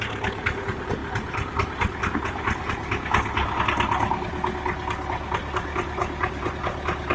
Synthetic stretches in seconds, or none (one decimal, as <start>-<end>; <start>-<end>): 6.0-6.6